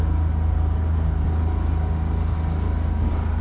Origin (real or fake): real